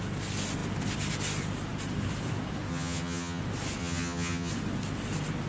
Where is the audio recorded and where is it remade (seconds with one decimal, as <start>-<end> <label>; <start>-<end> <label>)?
0.0-2.7 recorded; 2.7-3.4 remade; 3.4-3.8 recorded; 3.8-4.5 remade; 4.5-5.5 recorded